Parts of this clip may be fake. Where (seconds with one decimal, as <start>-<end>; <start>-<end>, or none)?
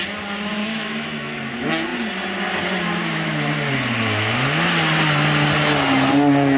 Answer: 0.6-1.4